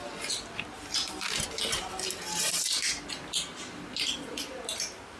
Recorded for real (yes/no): yes